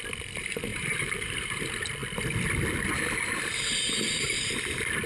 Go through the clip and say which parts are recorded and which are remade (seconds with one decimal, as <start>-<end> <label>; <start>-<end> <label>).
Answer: 0.0-0.7 recorded; 0.7-1.6 remade; 1.6-5.1 recorded